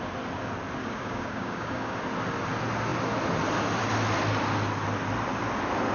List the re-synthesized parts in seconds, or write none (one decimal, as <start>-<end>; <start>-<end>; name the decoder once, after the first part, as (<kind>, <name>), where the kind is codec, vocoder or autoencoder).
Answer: 0.8-2.0 (codec, DAC)

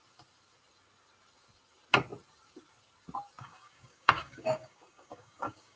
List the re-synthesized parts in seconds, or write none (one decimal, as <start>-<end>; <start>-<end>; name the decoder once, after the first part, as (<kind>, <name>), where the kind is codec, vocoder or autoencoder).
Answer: 3.4-5.8 (codec, DAC)